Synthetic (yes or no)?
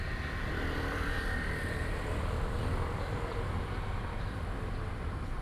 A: yes